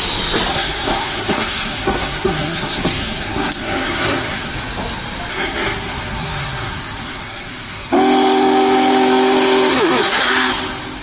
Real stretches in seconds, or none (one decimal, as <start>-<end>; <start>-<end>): 0.0-0.5; 4.5-5.3; 7.9-9.7; 10.3-11.0

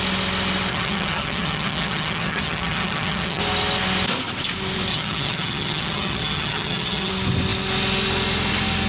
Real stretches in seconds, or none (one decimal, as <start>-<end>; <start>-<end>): 0.0-0.7; 3.4-4.9; 7.1-8.9

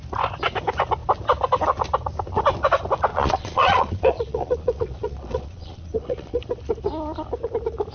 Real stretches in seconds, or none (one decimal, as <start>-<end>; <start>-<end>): 0.0-3.1; 6.4-7.9

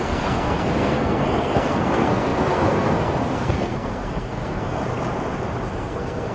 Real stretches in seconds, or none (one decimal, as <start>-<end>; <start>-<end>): 4.8-5.8

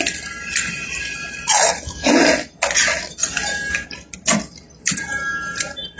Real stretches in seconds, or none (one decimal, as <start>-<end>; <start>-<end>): 0.0-6.0

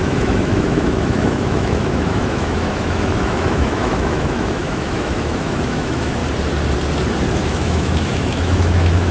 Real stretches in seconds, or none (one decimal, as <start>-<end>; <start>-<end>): 6.2-7.3